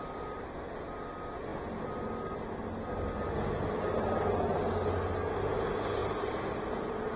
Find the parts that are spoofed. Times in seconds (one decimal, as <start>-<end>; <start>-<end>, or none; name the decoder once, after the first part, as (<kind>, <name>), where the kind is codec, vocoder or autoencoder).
6.0-7.2 (vocoder, BigVGAN v2)